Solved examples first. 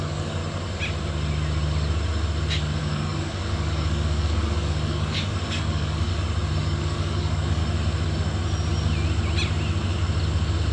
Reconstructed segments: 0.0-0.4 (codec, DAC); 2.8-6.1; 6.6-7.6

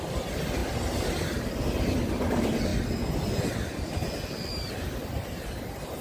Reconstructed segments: none

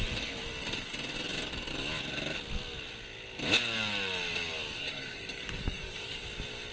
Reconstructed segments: 4.8-6.2 (codec, DAC)